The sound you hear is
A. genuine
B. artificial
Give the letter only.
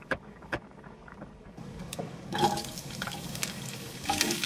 B